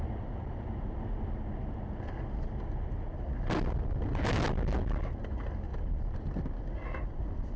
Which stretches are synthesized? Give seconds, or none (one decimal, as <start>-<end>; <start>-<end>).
none